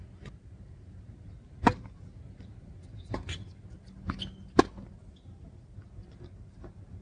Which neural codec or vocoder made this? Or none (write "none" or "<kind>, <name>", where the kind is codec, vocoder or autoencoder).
none